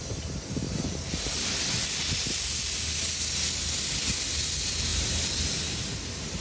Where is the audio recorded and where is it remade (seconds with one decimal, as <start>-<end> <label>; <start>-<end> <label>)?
0.0-6.4 recorded